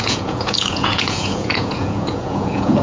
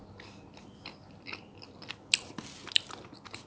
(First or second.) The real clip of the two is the second